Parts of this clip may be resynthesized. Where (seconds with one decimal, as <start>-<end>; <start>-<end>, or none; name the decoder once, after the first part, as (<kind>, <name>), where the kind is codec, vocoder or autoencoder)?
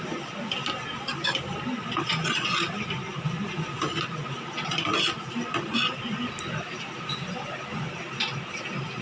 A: none